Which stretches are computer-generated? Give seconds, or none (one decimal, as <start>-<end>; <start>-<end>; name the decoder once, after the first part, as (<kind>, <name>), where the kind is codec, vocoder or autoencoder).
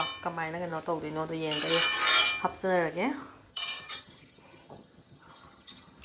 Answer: 3.5-6.0 (vocoder, HiFi-GAN)